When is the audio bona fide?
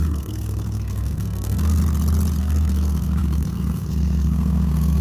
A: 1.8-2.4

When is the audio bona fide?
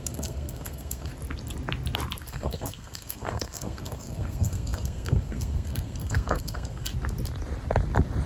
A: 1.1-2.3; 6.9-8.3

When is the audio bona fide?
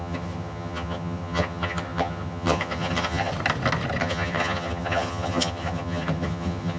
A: 3.3-4.0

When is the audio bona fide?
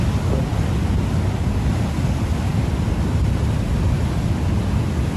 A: 0.5-1.7; 2.5-4.7